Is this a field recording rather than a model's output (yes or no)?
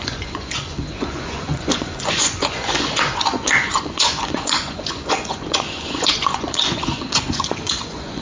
no